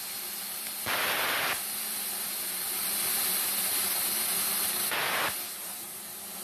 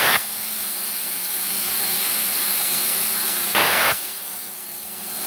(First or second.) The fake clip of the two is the second